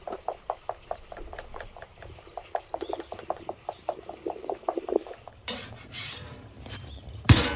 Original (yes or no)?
no